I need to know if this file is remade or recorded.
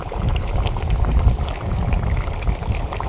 recorded